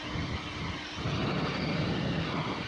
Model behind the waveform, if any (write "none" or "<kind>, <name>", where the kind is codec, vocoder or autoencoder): none